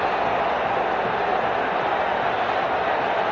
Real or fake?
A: real